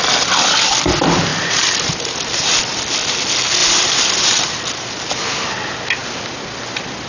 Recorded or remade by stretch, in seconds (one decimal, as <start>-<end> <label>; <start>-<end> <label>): 0.0-1.3 recorded; 1.3-2.6 remade; 2.6-3.6 recorded; 3.6-4.9 remade; 4.9-7.1 recorded